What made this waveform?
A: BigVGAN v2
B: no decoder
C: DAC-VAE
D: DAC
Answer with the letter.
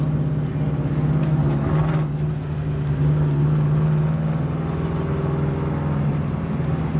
B